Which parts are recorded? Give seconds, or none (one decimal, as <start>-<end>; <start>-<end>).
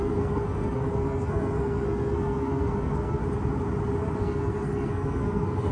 3.2-4.2